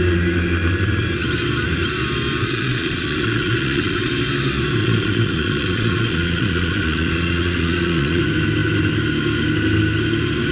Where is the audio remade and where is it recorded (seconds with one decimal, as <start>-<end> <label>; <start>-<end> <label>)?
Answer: 0.0-2.4 recorded; 2.4-4.1 remade; 4.1-4.8 recorded; 4.8-8.2 remade; 8.2-10.5 recorded